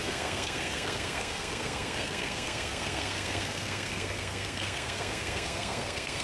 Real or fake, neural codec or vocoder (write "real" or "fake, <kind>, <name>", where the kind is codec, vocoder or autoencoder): fake, codec, SNAC